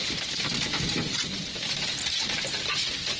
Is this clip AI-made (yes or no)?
yes